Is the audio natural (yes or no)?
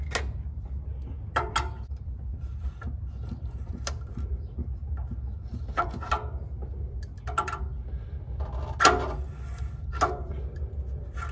yes